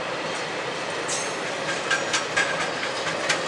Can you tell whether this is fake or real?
real